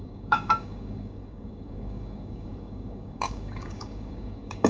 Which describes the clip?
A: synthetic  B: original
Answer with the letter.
A